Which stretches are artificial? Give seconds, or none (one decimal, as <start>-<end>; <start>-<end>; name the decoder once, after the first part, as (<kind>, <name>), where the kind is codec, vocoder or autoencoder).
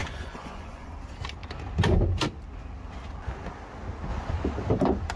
0.0-0.9 (vocoder, Vocos)